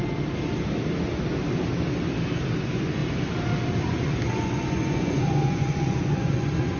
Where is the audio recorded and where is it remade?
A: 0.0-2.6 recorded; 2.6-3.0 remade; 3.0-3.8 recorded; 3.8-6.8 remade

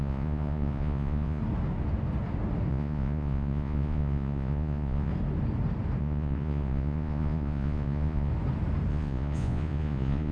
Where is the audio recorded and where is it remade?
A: 0.0-1.4 remade; 1.4-2.7 recorded; 2.7-5.1 remade; 5.1-6.0 recorded; 6.0-8.3 remade; 8.3-8.9 recorded; 8.9-10.3 remade

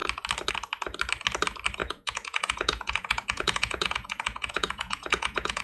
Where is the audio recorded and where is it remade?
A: 0.0-1.8 recorded; 1.8-5.6 remade

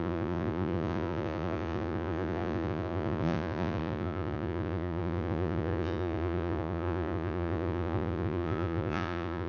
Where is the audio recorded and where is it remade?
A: 0.0-9.5 remade

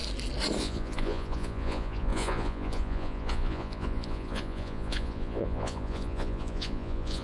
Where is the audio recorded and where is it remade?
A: 0.0-0.6 recorded; 0.6-7.2 remade

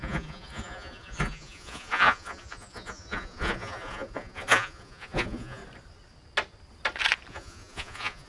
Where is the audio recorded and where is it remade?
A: 0.0-5.6 remade; 5.6-7.3 recorded; 7.3-8.3 remade

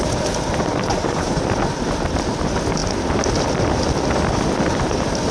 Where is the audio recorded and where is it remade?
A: 0.0-0.9 recorded; 0.9-1.4 remade; 1.4-5.3 recorded